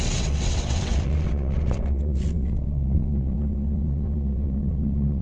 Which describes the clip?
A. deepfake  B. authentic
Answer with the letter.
A